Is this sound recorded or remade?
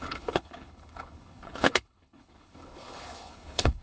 remade